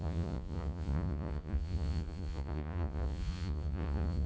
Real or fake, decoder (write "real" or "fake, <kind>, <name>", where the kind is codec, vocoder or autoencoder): fake, vocoder, Vocos